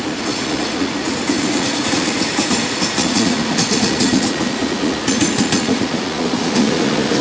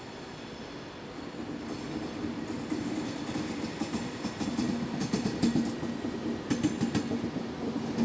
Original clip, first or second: second